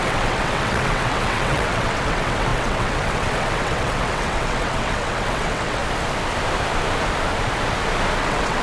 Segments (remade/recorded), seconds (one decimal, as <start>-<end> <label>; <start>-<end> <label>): 0.0-5.8 remade; 5.8-8.2 recorded; 8.2-8.6 remade